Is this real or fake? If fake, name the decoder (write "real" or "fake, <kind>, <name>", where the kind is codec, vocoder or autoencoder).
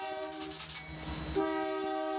real